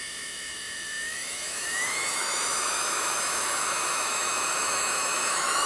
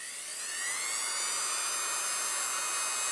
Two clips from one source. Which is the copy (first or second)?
first